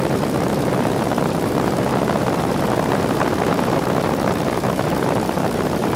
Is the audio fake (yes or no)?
yes